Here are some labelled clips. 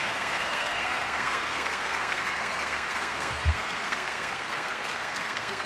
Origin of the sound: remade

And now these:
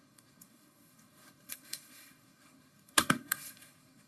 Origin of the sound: remade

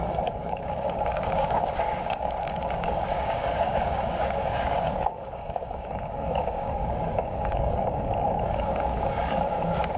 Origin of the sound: remade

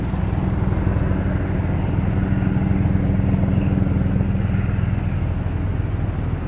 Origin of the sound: recorded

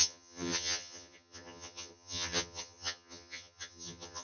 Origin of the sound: remade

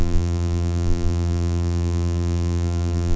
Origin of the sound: remade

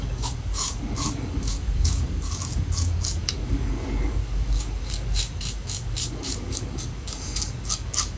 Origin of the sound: remade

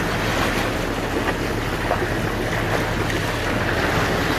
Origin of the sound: recorded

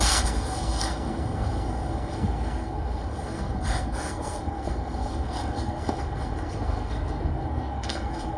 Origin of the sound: remade